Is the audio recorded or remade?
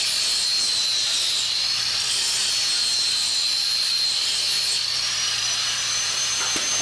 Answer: recorded